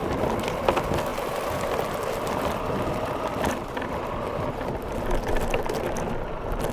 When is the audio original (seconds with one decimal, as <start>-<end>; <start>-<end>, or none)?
0.0-1.1; 1.7-6.7